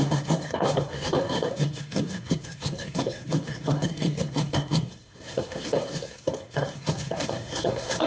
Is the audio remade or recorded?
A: remade